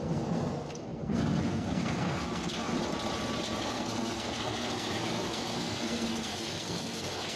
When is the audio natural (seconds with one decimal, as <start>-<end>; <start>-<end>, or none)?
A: 2.7-3.6